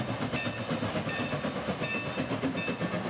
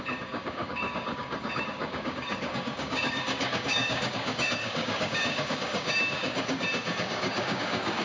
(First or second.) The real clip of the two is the first